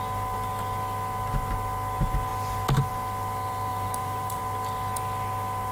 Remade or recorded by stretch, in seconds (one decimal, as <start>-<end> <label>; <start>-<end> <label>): 0.0-3.7 recorded; 3.7-4.4 remade; 4.4-5.7 recorded